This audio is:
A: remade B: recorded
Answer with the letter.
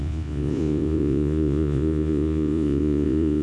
A